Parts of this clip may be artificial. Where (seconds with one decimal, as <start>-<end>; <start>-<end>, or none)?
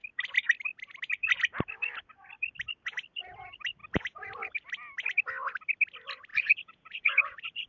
6.3-7.7